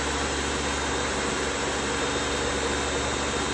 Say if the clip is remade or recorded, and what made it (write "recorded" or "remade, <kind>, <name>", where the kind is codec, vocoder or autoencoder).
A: recorded